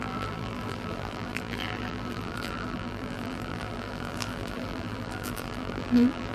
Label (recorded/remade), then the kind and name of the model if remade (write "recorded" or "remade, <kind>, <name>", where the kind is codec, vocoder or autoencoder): remade, vocoder, BigVGAN v2